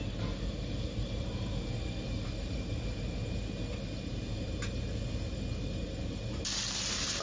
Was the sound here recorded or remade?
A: remade